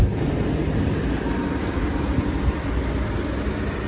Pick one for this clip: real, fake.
real